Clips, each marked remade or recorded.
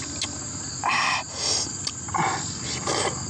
recorded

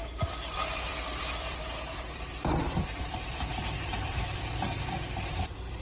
remade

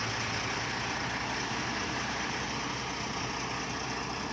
recorded